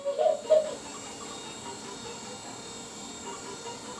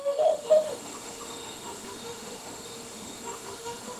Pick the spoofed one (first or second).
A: second